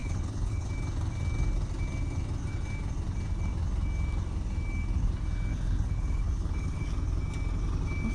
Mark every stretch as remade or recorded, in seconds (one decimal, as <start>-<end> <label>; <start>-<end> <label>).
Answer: 0.0-0.7 remade; 0.7-5.5 recorded; 5.5-6.8 remade; 6.8-8.1 recorded